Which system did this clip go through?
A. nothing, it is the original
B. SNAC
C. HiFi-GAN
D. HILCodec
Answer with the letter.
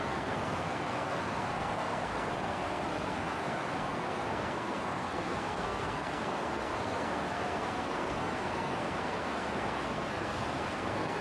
B